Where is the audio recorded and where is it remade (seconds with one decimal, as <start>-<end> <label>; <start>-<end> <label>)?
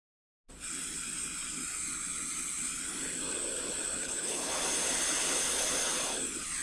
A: 0.0-4.0 recorded; 4.0-4.5 remade; 4.5-6.6 recorded